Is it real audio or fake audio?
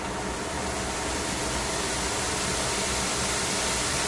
real